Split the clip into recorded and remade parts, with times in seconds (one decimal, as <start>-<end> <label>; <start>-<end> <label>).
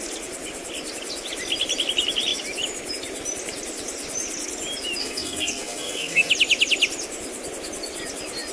0.0-5.0 recorded; 5.0-6.3 remade; 6.3-8.5 recorded